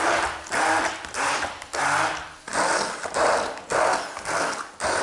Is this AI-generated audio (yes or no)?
no